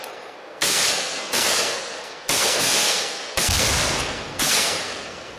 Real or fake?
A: fake